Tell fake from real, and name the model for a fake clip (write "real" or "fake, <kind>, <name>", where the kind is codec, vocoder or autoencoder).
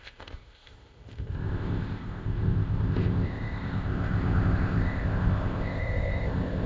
fake, codec, ZipCodec